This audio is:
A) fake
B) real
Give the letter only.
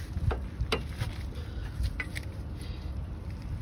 B